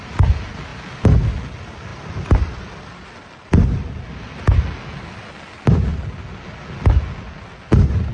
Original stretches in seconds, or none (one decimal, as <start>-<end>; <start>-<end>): 0.0-0.7; 1.4-1.9; 3.9-8.1